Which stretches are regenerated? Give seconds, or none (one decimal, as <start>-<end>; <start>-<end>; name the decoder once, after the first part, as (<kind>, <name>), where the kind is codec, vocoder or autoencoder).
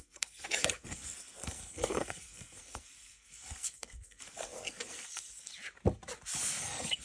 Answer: 0.0-5.5 (codec, SNAC); 6.6-7.0